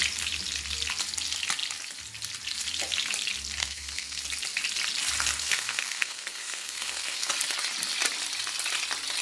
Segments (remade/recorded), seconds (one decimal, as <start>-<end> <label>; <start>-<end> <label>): 0.0-3.6 recorded; 3.6-4.2 remade; 4.2-5.4 recorded; 5.4-7.3 remade; 7.3-9.2 recorded